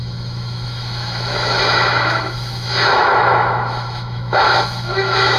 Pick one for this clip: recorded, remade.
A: remade